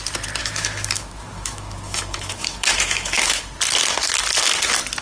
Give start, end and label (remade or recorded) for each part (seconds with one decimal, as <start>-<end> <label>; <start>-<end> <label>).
0.0-0.4 recorded; 0.4-3.4 remade; 3.4-5.0 recorded